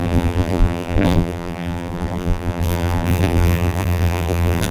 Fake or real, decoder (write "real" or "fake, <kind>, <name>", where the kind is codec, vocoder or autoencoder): fake, vocoder, BigVGAN v2